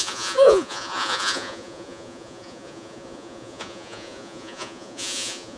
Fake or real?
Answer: fake